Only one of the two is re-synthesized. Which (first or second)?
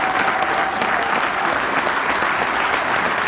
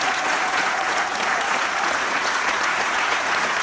second